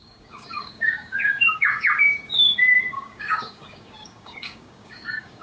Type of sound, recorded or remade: remade